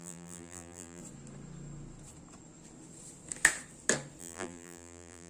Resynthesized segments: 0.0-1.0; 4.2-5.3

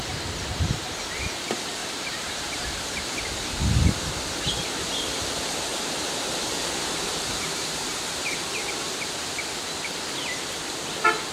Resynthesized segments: 1.8-3.1; 5.7-9.3